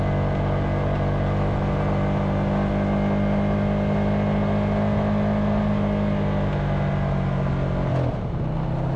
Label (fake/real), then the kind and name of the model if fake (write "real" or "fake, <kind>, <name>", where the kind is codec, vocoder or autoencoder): real